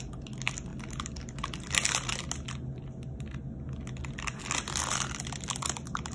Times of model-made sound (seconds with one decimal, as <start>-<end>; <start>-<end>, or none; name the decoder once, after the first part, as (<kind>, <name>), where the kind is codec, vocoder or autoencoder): none